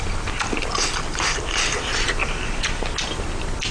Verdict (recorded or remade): remade